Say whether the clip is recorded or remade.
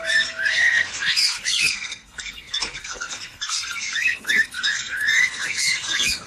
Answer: remade